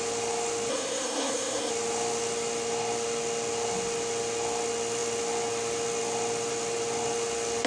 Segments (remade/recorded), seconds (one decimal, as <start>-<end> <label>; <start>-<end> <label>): 0.0-0.7 recorded; 0.7-1.7 remade; 1.7-7.7 recorded